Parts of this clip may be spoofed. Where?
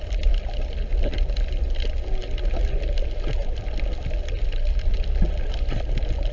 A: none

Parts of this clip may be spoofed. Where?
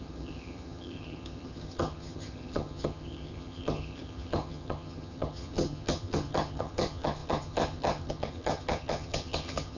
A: 0.0-9.8 (vocoder, HiFi-GAN)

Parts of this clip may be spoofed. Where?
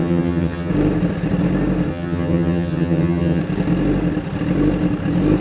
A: 0.0-0.7 (vocoder, HiFi-GAN); 1.9-3.4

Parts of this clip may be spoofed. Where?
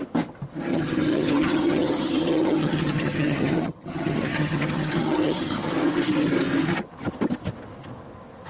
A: 0.7-5.7 (vocoder, HiFi-GAN)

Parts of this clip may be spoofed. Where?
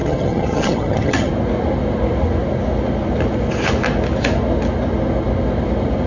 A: 0.0-1.3 (vocoder, HiFi-GAN)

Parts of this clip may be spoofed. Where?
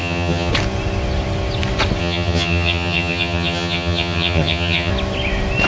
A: 0.0-0.5 (vocoder, HiFi-GAN); 2.0-4.9